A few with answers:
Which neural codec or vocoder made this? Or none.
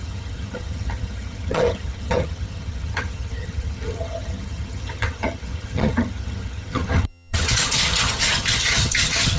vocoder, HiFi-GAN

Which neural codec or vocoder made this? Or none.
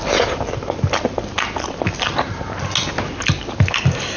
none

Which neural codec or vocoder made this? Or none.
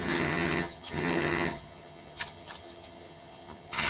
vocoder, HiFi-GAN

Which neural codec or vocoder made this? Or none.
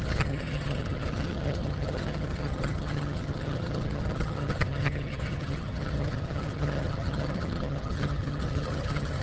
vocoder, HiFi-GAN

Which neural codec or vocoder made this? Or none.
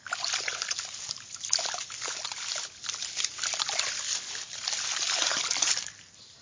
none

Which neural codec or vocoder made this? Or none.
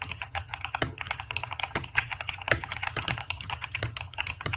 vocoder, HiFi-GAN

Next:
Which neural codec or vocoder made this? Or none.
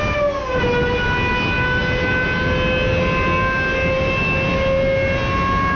none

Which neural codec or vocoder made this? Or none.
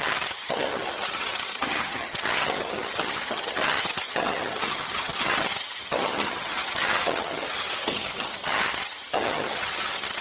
vocoder, HiFi-GAN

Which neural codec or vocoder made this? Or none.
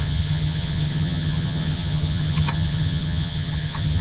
vocoder, HiFi-GAN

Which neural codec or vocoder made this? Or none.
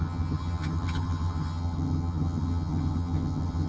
vocoder, HiFi-GAN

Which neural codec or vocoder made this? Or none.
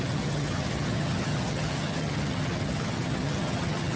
vocoder, HiFi-GAN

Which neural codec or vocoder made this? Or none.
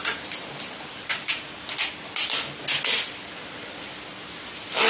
none